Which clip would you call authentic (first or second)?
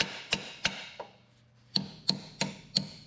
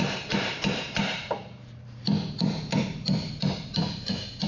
first